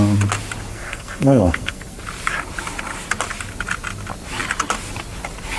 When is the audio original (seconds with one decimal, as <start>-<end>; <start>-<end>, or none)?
0.0-0.7; 2.0-5.6